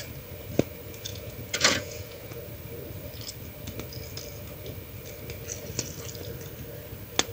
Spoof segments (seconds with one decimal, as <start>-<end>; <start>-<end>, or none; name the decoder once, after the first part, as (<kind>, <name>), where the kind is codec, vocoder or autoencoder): 1.1-2.4 (vocoder, Vocos)

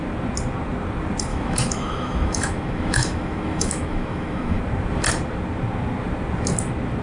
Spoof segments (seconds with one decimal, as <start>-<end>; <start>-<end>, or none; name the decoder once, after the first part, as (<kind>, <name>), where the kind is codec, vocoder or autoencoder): 1.3-4.6 (autoencoder, DAC-VAE)

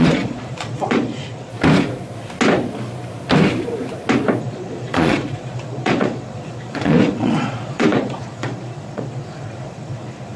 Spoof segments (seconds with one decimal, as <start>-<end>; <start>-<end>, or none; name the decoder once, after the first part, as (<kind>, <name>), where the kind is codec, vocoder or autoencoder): 0.0-1.5 (vocoder, Vocos); 4.4-10.4

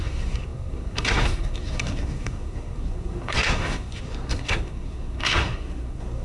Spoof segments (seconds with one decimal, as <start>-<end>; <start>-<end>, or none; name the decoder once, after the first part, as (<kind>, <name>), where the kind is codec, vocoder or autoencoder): 0.0-6.2 (codec, SNAC)

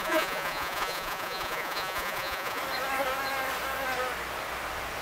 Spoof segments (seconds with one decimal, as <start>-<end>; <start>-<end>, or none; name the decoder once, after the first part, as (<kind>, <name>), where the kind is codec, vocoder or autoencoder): 0.0-2.6 (vocoder, Vocos)

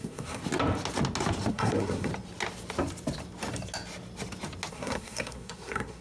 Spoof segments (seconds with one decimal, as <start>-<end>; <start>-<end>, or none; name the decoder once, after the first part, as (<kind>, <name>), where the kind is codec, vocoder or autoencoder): 0.0-0.4 (codec, SNAC); 1.5-2.1; 4.7-6.0

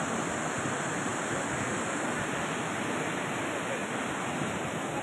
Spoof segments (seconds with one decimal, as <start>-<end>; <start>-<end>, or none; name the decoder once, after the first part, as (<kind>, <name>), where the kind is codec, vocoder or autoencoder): 1.1-3.1 (vocoder, BigVGAN v2); 3.8-5.0

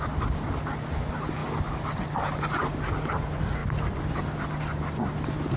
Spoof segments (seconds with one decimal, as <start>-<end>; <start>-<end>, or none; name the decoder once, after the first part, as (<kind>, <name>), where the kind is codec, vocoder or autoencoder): none